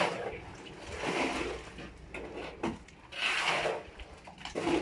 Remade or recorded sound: recorded